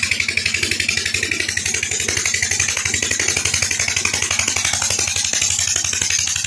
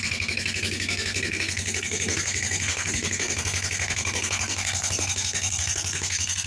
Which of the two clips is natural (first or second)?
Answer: first